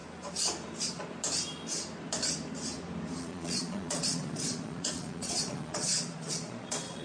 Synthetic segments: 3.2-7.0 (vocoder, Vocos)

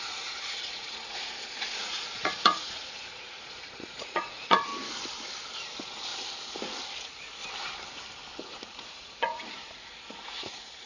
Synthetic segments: 0.0-4.7 (vocoder, Vocos); 7.0-7.4; 8.4-10.9

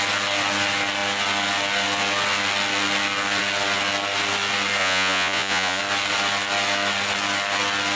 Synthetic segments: 4.8-5.8 (vocoder, Vocos)

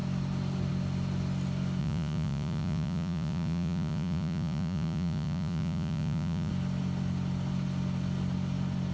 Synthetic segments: 1.8-6.5 (vocoder, Vocos)

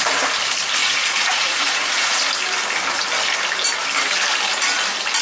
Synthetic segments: 0.8-2.2 (vocoder, Vocos)